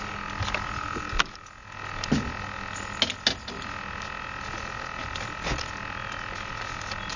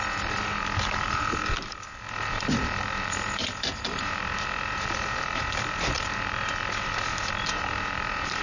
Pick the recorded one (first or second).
first